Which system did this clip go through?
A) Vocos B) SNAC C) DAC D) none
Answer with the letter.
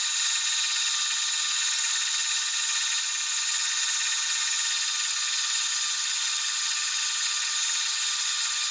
D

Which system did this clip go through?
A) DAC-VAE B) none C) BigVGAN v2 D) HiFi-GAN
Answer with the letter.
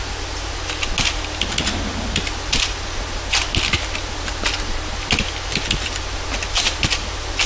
B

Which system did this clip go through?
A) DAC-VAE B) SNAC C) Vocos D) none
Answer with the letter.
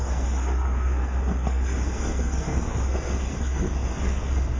B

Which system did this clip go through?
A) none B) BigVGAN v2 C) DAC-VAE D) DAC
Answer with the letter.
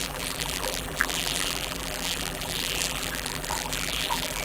B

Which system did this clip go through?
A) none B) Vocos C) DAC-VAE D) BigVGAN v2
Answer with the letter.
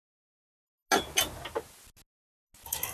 A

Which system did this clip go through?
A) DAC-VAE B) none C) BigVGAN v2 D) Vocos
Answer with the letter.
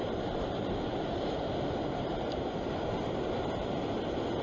B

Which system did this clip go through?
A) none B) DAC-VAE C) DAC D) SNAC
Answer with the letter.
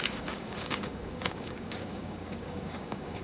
C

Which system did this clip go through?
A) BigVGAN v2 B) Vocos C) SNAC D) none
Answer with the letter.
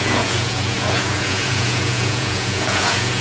B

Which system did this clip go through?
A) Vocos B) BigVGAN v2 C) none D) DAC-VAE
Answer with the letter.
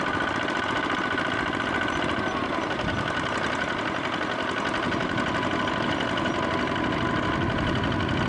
C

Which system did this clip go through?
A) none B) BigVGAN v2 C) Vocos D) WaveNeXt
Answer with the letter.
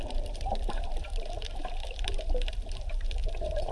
B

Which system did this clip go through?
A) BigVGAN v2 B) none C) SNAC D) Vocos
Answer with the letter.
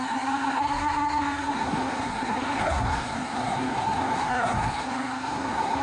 C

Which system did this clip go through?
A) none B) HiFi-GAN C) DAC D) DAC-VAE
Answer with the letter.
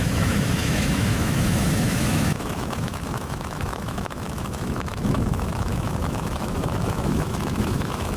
D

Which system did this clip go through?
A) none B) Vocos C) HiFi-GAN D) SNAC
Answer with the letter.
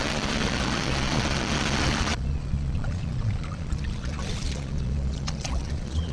B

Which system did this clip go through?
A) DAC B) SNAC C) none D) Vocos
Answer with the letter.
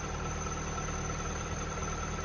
C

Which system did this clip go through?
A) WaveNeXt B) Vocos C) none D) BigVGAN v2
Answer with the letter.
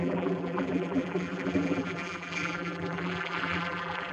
D